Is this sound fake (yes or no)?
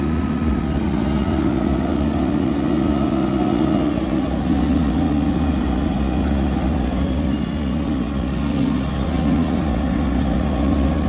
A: yes